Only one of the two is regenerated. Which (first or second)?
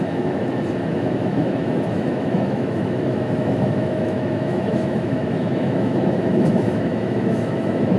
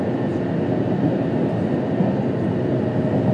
first